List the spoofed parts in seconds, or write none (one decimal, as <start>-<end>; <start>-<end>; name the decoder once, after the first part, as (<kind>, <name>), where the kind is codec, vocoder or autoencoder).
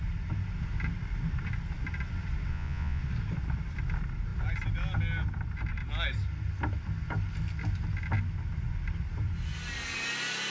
2.5-3.0 (vocoder, Vocos)